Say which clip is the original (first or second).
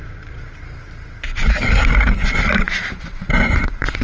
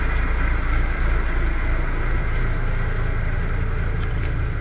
second